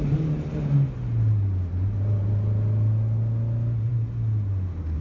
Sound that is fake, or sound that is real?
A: real